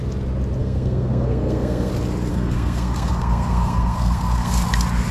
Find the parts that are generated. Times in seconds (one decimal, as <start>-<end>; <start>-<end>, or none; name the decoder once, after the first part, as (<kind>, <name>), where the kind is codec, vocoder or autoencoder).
0.6-1.9 (codec, SNAC); 2.3-4.5

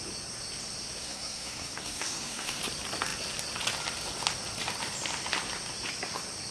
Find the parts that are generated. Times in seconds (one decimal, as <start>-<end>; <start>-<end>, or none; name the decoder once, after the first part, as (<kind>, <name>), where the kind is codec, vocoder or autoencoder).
1.0-2.6 (codec, SNAC)

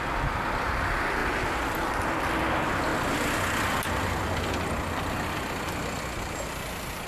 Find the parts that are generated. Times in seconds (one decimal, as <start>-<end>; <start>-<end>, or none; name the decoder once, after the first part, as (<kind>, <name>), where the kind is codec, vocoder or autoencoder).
none